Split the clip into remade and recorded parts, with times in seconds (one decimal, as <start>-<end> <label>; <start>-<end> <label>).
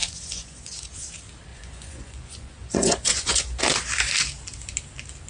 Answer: 0.0-0.9 remade; 0.9-1.5 recorded; 1.5-3.6 remade; 3.6-5.3 recorded